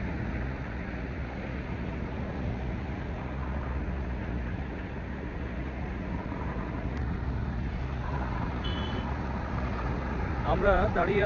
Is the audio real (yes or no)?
no